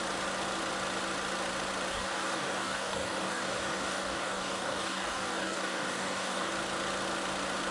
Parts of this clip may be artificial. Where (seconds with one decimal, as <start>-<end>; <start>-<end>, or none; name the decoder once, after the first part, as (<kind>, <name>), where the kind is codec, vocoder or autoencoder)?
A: 1.9-6.5 (codec, DAC)